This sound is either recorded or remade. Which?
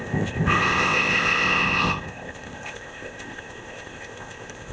remade